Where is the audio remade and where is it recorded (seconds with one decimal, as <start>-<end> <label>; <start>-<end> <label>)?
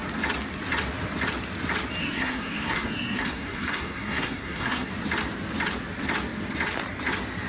0.0-2.0 recorded; 2.0-4.9 remade; 4.9-7.5 recorded